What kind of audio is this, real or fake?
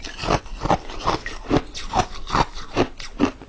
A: real